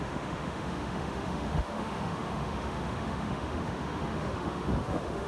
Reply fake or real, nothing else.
fake